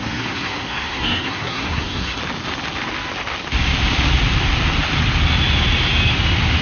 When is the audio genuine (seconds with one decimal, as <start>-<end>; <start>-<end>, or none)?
2.2-6.6